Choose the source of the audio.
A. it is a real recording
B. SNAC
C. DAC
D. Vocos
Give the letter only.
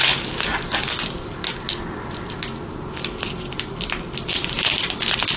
A